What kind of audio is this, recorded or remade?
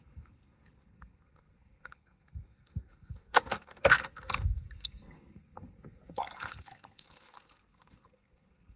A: remade